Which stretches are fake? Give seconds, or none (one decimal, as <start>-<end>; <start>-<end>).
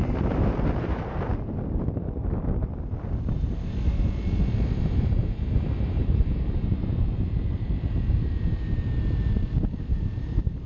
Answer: 0.0-1.3; 5.1-8.3; 9.8-10.7